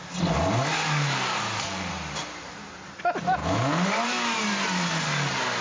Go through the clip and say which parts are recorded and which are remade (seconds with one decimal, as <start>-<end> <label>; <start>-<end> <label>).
0.0-0.7 recorded; 0.7-1.9 remade; 1.9-3.4 recorded; 3.4-4.4 remade; 4.4-5.6 recorded